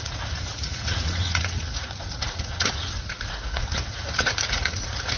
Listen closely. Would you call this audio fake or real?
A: fake